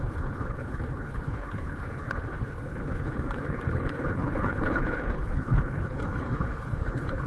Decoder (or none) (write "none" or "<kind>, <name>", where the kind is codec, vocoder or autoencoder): codec, HILCodec